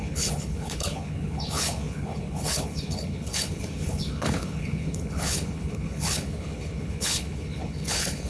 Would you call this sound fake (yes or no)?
yes